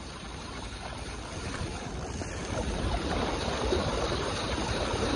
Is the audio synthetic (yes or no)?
yes